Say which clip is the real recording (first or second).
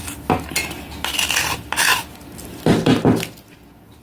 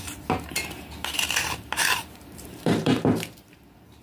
first